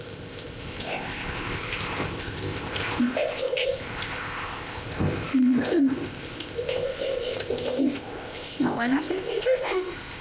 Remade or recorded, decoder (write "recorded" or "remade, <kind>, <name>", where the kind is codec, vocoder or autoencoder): remade, codec, ZipCodec